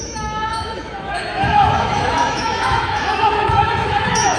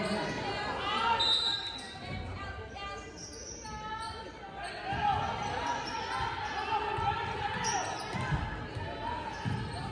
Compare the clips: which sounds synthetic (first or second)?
first